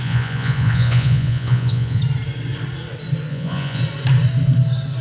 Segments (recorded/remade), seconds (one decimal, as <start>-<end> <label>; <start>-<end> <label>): 0.0-2.0 remade; 2.0-3.3 recorded; 3.3-3.8 remade; 3.8-5.0 recorded